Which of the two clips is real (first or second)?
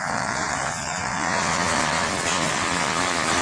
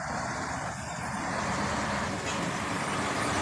second